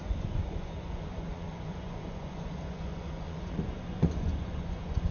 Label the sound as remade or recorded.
remade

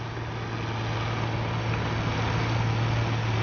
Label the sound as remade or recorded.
recorded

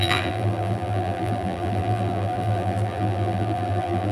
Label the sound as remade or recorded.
remade